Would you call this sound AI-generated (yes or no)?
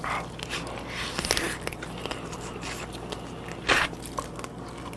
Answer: no